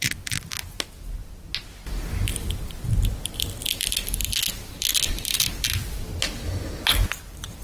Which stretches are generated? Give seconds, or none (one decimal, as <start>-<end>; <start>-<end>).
none